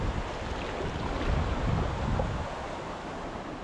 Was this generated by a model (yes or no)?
no